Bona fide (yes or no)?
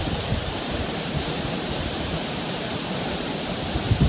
no